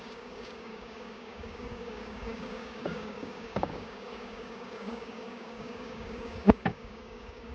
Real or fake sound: fake